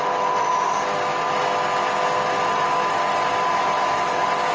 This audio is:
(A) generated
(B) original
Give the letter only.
B